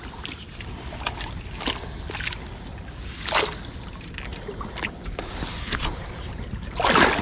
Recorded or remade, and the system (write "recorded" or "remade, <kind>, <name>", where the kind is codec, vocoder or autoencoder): recorded